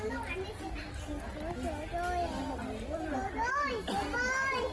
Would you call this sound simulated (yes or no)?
no